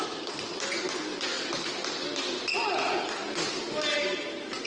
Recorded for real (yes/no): yes